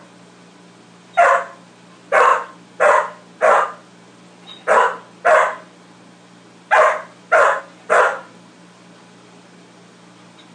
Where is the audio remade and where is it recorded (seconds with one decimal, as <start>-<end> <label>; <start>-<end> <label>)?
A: 0.0-10.5 recorded